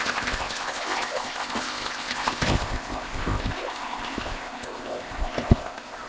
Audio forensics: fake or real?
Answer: fake